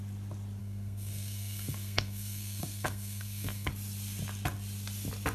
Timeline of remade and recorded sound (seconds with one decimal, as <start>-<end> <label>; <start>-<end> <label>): 0.0-0.6 recorded; 0.6-3.7 remade; 3.7-5.3 recorded